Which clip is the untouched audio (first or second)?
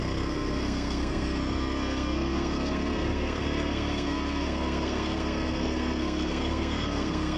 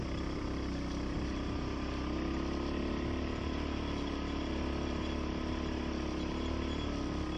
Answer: second